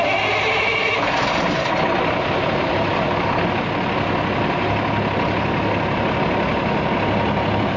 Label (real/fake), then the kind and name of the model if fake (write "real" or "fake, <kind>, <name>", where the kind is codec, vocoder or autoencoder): real